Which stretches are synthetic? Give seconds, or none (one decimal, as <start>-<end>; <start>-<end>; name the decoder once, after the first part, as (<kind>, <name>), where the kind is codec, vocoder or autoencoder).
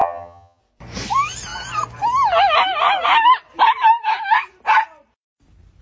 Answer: 0.0-0.6 (vocoder, HiFi-GAN)